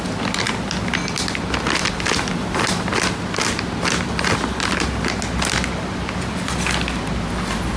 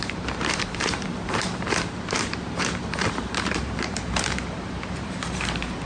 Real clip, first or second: first